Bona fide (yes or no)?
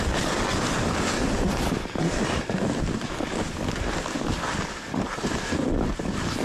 yes